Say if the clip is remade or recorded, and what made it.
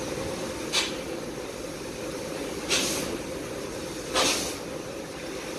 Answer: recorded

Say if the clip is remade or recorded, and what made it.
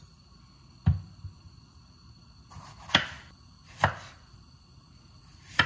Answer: remade, vocoder, BigVGAN v2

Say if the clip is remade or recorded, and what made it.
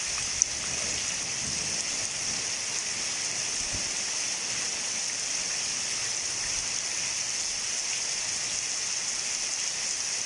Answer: recorded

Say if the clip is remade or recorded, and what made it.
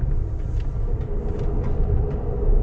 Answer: recorded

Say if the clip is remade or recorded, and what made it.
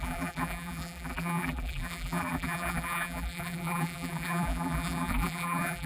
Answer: remade, vocoder, BigVGAN v2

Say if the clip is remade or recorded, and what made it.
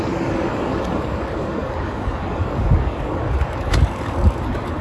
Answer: remade, codec, DAC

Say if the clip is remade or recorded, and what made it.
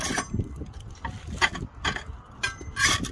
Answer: recorded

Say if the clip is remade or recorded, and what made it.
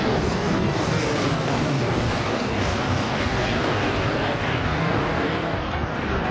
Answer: remade, codec, DAC